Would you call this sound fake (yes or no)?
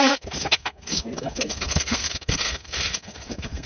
yes